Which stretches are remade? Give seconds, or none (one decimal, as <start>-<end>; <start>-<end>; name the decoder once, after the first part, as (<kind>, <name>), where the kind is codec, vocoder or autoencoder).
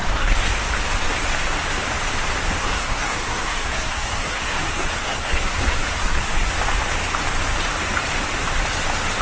0.0-0.5 (codec, SNAC); 2.6-6.5